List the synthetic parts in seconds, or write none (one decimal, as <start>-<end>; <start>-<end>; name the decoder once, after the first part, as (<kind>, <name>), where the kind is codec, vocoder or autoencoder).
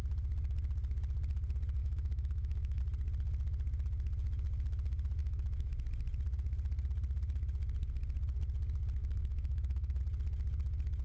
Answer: 1.8-2.8 (autoencoder, DAC-VAE); 5.2-5.7; 9.0-10.0